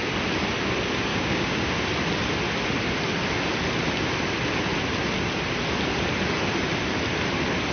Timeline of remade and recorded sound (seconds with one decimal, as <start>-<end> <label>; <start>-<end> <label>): 0.0-1.1 recorded; 1.1-1.7 remade; 1.7-7.7 recorded